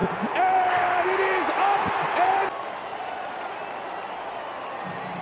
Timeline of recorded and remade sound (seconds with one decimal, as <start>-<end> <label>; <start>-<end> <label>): 0.0-2.9 recorded; 2.9-3.5 remade; 3.5-5.2 recorded